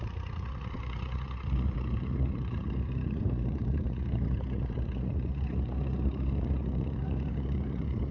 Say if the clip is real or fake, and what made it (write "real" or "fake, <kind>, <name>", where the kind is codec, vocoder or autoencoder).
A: fake, vocoder, Vocos